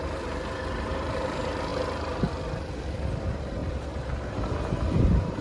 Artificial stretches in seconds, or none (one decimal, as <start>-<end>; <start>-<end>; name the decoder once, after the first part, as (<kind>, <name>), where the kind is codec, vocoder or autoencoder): 0.0-1.7 (vocoder, BigVGAN v2); 2.8-3.6; 4.8-5.4

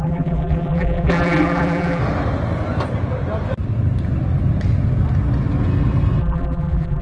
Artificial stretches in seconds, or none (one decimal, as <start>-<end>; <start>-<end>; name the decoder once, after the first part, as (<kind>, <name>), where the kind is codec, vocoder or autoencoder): 0.0-2.0 (vocoder, BigVGAN v2); 6.2-7.0